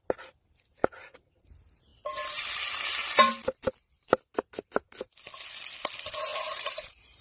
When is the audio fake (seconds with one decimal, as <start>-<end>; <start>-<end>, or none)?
0.8-1.5; 6.3-7.2